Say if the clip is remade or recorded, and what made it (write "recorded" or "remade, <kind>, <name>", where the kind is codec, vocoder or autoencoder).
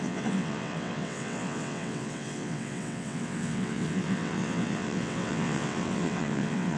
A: remade, vocoder, WaveNeXt